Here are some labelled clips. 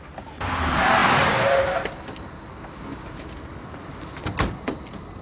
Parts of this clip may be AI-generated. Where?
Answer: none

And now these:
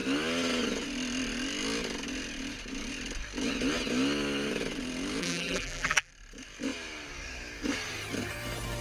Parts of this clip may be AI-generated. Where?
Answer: 5.2-6.1 (vocoder, BigVGAN v2)